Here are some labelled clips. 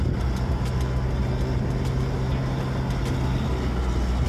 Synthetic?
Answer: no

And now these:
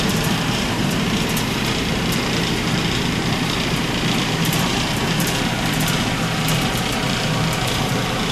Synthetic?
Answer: yes